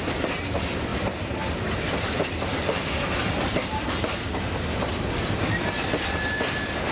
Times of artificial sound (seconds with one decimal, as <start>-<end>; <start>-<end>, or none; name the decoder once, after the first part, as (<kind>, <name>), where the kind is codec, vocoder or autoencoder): 0.0-0.9 (vocoder, BigVGAN v2); 1.9-2.5; 5.7-6.9